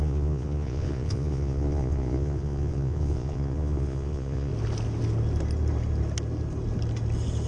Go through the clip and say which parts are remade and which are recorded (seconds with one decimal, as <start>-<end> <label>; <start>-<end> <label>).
0.0-4.5 remade; 4.5-7.5 recorded